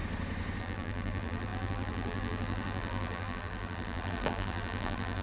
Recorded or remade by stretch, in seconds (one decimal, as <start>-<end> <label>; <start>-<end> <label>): 0.0-0.6 recorded; 0.6-5.2 remade